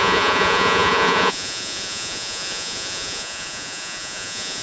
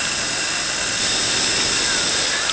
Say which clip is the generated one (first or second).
first